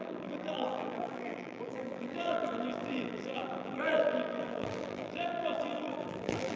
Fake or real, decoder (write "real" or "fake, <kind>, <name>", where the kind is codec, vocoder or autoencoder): fake, vocoder, BigVGAN v2